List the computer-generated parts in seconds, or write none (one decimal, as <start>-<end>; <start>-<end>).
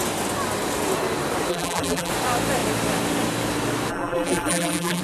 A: 1.5-2.1; 3.9-5.0